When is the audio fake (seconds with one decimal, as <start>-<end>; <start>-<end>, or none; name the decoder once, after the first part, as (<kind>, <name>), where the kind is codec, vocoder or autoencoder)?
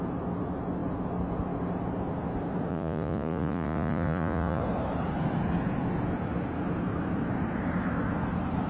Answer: 2.7-4.6 (vocoder, Vocos)